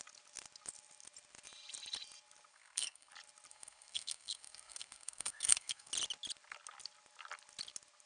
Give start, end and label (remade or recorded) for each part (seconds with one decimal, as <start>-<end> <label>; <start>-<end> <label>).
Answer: 0.0-2.5 recorded; 2.5-3.1 remade; 3.1-3.5 recorded; 3.5-5.9 remade; 5.9-8.1 recorded